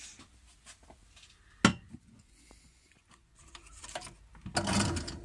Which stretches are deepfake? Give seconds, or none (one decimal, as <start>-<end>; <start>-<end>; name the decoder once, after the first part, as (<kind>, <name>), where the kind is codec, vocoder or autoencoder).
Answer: 1.7-3.4 (vocoder, Vocos)